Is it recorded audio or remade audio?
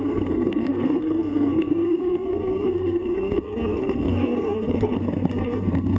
remade